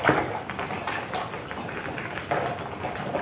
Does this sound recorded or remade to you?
recorded